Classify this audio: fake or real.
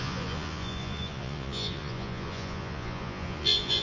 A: fake